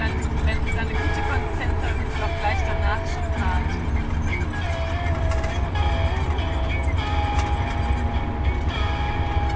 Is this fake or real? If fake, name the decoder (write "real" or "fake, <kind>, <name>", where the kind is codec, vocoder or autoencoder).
real